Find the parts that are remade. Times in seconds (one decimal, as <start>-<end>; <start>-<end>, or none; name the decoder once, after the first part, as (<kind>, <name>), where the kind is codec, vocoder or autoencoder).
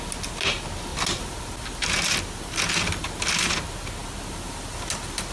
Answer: none